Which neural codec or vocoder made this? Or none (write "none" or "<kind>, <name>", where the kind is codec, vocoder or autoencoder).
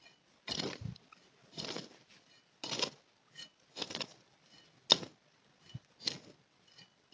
none